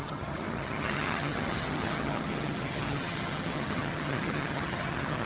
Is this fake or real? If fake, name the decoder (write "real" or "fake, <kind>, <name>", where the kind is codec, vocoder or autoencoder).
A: fake, vocoder, HiFi-GAN